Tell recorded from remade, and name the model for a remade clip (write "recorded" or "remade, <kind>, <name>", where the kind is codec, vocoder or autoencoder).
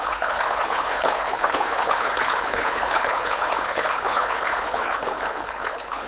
remade, codec, HILCodec